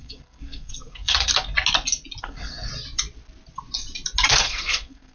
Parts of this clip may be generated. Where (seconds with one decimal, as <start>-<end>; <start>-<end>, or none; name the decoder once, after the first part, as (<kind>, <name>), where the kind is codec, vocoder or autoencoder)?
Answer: 0.0-1.3 (codec, SNAC); 2.2-2.7; 4.3-5.1